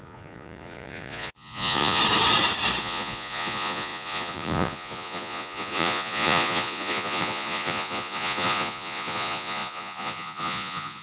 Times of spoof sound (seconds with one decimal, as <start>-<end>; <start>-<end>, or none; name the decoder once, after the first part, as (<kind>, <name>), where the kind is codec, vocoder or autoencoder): 0.0-2.0 (vocoder, Vocos); 2.8-11.0